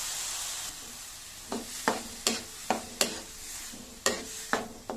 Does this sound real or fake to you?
real